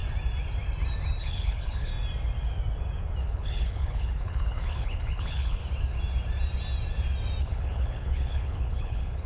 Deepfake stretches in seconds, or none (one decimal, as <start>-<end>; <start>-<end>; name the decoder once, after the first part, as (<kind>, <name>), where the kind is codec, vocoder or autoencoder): 1.2-1.9 (codec, HILCodec); 3.2-5.6; 7.4-9.3